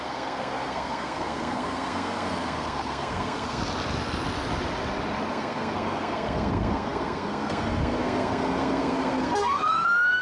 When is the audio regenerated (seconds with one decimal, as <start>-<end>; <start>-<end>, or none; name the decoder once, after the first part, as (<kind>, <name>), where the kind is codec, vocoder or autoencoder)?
0.0-3.6 (codec, SNAC); 5.3-10.2